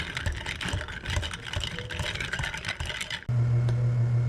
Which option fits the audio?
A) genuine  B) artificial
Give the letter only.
A